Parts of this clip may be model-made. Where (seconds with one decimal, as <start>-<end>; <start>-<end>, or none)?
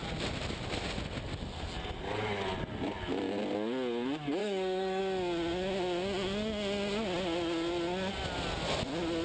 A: 4.4-5.0